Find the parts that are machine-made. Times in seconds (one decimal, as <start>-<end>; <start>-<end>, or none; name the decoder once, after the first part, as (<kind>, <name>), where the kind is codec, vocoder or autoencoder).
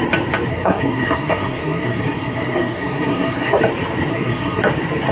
0.5-3.6 (codec, SNAC); 4.1-4.6